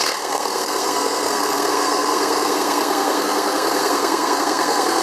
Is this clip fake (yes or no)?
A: yes